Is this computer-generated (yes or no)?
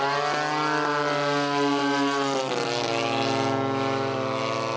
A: no